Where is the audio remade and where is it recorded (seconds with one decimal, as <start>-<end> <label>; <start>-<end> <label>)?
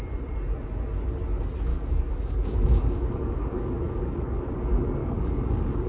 0.0-1.7 recorded; 1.7-4.4 remade; 4.4-5.0 recorded; 5.0-5.9 remade